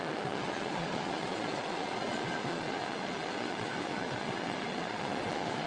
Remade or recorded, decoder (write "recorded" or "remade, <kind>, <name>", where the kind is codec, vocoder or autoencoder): remade, vocoder, Vocos